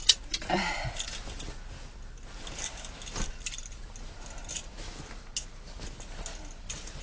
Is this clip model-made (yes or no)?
no